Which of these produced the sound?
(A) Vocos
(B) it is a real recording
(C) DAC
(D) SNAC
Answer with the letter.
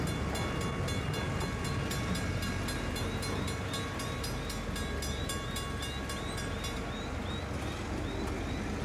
B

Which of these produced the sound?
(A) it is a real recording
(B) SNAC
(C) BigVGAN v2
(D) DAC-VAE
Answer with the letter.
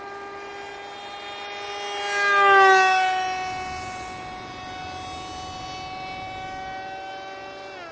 A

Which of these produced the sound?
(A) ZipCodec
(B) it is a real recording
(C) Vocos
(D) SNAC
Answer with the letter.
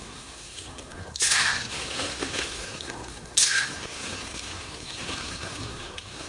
D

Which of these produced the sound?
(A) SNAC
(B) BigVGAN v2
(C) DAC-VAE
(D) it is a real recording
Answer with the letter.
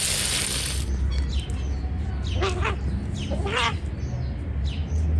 D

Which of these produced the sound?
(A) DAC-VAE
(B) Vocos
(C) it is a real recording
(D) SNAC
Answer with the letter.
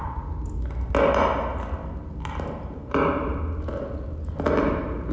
C